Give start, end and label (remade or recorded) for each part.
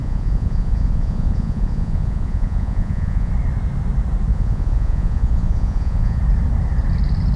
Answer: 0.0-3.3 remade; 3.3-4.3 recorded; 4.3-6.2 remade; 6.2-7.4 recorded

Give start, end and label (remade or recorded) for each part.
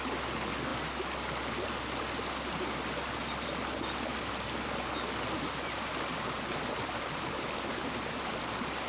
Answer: 0.0-8.9 recorded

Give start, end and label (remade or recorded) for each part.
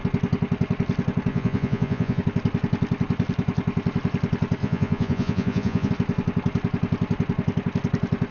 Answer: 0.0-1.3 recorded; 1.3-2.2 remade; 2.2-4.6 recorded; 4.6-5.9 remade; 5.9-8.3 recorded